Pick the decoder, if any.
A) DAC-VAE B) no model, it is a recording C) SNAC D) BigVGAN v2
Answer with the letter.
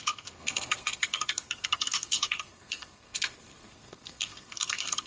C